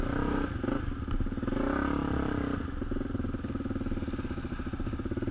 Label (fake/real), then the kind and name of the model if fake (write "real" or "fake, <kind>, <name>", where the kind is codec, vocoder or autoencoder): real